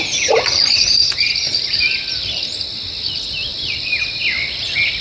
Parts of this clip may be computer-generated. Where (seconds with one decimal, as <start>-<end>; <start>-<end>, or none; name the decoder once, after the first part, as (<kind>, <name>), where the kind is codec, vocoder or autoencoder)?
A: 1.0-2.1 (vocoder, BigVGAN v2); 3.5-4.0